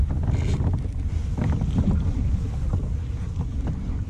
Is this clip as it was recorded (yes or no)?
yes